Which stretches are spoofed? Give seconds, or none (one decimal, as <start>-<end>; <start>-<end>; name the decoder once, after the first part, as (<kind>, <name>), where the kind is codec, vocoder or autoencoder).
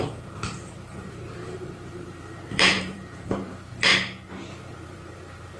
0.0-3.9 (vocoder, BigVGAN v2); 4.5-5.6